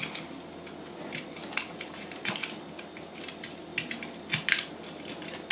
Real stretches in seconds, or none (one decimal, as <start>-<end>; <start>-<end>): 0.0-5.5